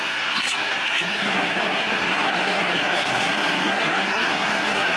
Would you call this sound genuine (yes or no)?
no